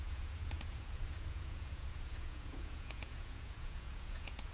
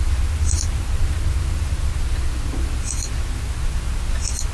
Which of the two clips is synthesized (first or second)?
first